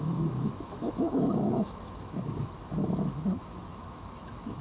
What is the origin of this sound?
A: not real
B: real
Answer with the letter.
A